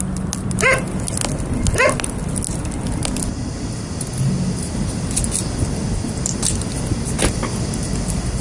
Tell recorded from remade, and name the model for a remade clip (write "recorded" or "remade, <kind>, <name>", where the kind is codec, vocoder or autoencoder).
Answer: recorded